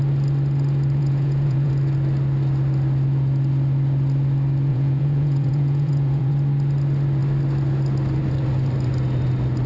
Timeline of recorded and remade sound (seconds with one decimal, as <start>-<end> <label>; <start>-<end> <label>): 0.0-1.0 recorded; 1.0-1.7 remade; 1.7-4.7 recorded; 4.7-6.3 remade; 6.3-9.7 recorded